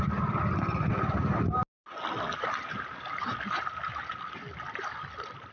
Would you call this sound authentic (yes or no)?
yes